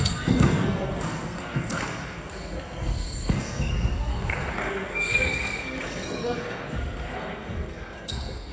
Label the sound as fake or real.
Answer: fake